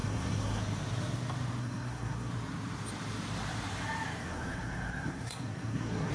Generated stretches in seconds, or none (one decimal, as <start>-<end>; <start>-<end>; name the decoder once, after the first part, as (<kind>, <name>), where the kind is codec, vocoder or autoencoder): 0.0-0.6 (codec, SNAC); 1.6-2.3; 4.2-6.1